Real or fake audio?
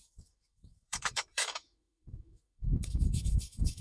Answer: fake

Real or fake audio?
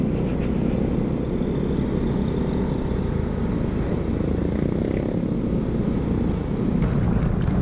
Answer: real